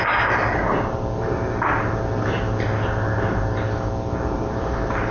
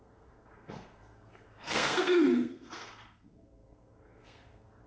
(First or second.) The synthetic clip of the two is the second